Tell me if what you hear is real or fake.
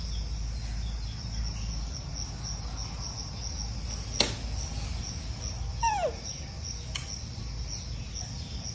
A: real